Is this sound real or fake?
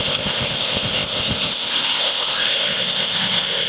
fake